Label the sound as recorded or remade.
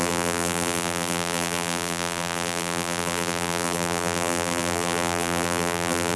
remade